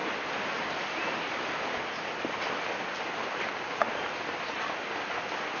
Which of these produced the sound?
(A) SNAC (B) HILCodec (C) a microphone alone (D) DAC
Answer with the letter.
C